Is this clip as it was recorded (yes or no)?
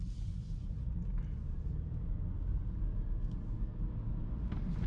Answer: yes